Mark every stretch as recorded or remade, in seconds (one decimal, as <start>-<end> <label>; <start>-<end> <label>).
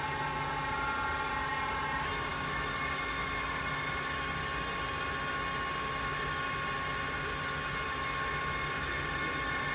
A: 0.0-9.7 recorded